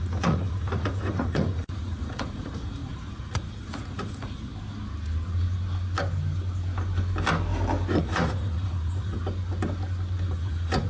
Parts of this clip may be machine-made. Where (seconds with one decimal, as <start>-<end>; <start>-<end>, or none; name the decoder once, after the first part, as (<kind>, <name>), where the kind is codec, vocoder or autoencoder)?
0.0-4.5 (vocoder, Vocos); 8.0-9.2; 10.3-10.9